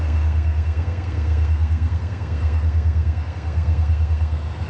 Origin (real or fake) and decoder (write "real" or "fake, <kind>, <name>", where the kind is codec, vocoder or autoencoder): fake, codec, SNAC